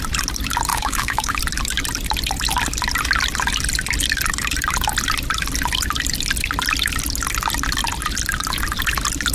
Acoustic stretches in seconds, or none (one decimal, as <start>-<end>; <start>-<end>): 0.0-0.7; 1.4-9.3